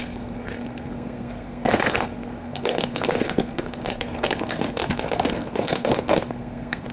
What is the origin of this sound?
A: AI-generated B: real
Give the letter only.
A